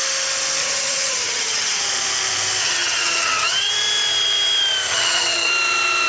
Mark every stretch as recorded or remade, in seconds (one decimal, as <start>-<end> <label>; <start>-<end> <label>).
0.0-0.6 recorded; 0.6-1.8 remade; 1.8-2.6 recorded; 2.6-3.7 remade; 3.7-4.9 recorded; 4.9-5.5 remade; 5.5-6.1 recorded